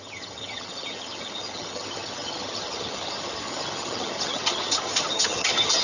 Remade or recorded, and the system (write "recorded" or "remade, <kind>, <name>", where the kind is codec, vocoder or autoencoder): remade, vocoder, HiFi-GAN